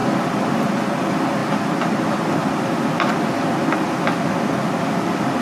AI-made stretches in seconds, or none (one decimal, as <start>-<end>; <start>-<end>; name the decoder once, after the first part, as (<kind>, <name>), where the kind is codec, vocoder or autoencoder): 0.0-0.7 (vocoder, BigVGAN v2); 1.4-4.4